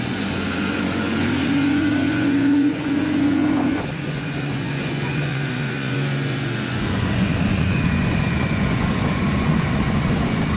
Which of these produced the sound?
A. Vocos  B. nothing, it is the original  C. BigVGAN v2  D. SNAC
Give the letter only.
A